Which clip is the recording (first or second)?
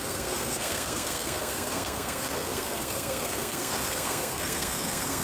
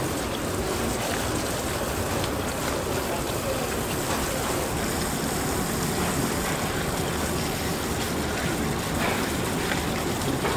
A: second